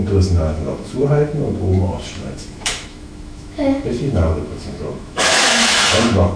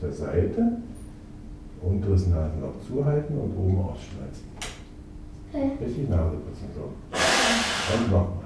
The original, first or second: second